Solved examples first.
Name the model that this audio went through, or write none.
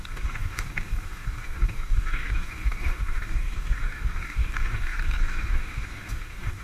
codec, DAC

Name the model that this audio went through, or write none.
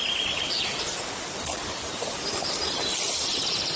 none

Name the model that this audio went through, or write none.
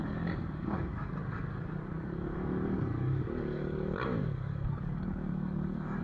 codec, DAC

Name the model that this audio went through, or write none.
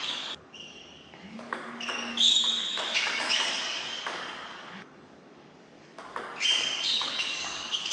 codec, DAC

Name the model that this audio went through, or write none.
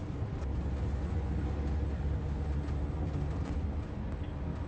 none